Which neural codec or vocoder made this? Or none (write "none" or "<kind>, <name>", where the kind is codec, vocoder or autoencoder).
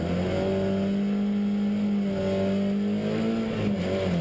none